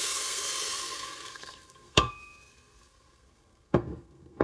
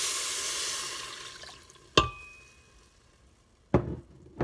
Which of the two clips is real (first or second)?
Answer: second